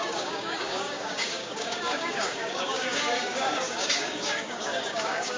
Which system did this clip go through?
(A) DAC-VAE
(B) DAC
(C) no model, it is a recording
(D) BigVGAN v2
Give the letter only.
B